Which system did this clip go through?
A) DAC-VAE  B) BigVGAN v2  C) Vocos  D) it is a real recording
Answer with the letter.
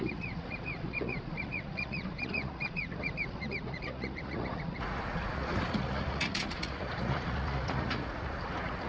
C